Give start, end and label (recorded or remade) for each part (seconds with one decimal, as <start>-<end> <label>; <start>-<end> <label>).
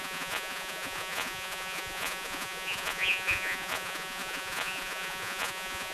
0.0-5.9 remade